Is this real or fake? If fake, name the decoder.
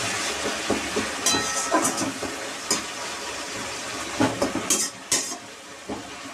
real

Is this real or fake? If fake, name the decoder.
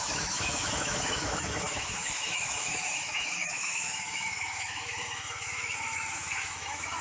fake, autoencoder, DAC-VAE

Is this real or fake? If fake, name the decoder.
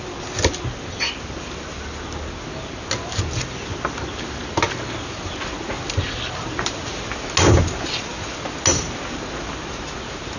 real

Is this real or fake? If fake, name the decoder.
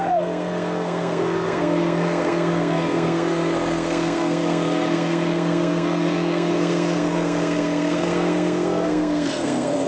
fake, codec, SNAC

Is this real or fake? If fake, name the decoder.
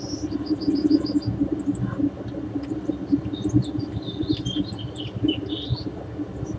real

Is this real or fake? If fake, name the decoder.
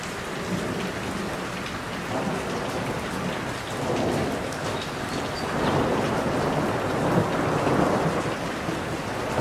real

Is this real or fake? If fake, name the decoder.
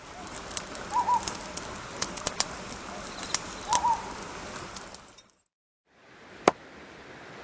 real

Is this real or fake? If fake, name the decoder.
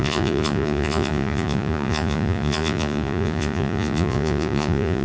fake, vocoder, Vocos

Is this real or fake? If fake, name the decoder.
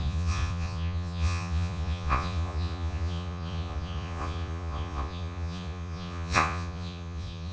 fake, vocoder, Vocos